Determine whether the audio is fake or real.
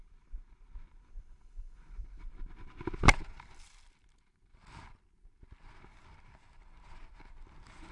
real